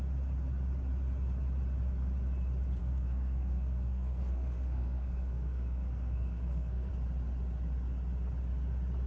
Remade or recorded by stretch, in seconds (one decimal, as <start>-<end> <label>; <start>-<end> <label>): 0.0-2.8 recorded; 2.8-6.9 remade; 6.9-9.1 recorded